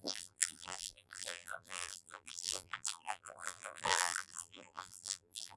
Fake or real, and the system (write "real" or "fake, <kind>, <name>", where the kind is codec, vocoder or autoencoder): fake, vocoder, BigVGAN v2